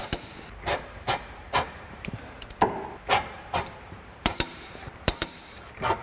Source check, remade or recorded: remade